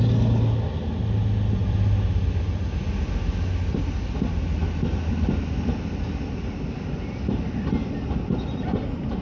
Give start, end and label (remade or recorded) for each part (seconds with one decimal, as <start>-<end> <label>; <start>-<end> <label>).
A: 0.0-9.2 recorded